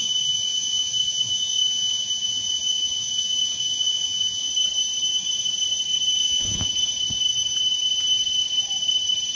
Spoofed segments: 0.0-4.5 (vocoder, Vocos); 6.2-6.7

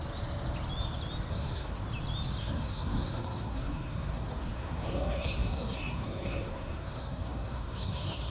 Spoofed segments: 1.3-1.8 (codec, SNAC); 2.4-8.3

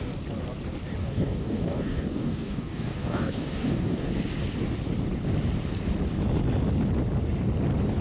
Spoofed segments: 1.0-4.1 (codec, DAC)